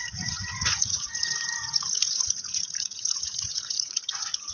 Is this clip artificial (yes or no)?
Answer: yes